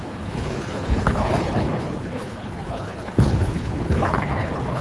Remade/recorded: remade